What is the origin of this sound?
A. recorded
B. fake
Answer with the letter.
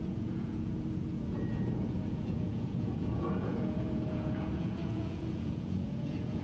B